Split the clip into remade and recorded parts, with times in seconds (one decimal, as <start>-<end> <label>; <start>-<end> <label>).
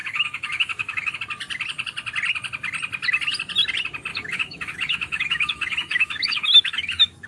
0.0-1.2 remade; 1.2-4.1 recorded; 4.1-7.3 remade